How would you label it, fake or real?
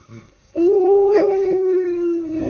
fake